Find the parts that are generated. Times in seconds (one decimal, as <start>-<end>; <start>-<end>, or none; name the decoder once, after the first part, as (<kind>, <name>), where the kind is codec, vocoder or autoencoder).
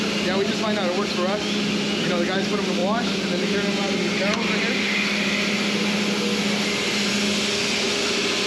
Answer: none